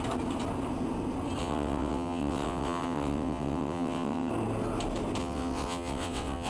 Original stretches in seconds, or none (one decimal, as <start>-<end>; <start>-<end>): 0.0-1.4; 4.3-5.2